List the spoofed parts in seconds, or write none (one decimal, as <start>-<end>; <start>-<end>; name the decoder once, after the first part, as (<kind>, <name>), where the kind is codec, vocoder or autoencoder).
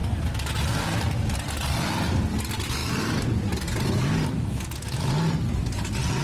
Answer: none